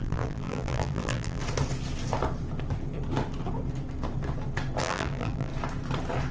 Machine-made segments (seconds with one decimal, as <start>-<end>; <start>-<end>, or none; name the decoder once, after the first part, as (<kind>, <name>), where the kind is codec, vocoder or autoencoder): 0.0-1.4 (vocoder, BigVGAN v2); 4.8-5.5